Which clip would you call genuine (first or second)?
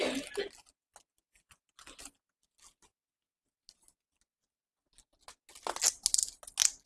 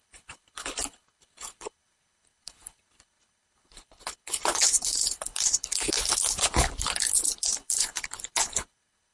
first